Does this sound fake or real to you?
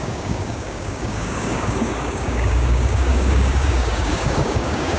fake